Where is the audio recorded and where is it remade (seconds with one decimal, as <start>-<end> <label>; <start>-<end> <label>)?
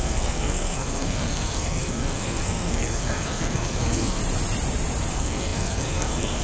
0.0-4.2 remade; 4.2-5.1 recorded; 5.1-6.4 remade